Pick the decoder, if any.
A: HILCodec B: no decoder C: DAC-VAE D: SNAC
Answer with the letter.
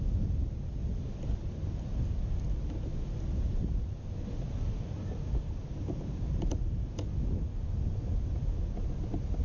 B